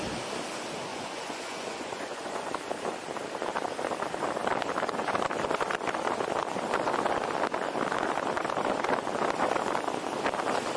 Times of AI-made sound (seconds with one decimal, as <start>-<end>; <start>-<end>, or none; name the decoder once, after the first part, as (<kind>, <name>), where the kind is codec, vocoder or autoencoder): 0.9-2.5 (vocoder, Vocos)